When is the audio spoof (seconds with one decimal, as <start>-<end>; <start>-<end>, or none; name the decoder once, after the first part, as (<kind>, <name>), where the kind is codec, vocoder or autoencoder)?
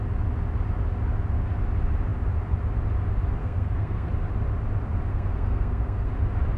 3.4-4.1 (codec, SNAC); 5.1-6.1